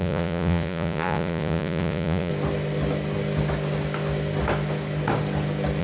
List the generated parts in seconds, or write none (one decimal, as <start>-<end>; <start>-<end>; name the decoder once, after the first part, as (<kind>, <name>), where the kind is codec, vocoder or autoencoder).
0.0-2.3 (vocoder, Vocos)